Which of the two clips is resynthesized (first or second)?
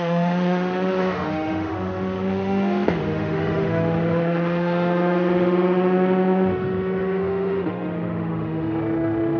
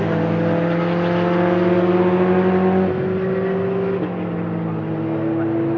first